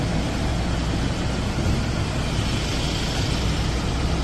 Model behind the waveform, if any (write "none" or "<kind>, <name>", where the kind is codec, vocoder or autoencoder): none